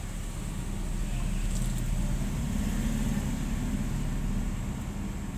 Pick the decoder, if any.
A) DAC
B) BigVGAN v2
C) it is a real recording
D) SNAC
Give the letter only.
C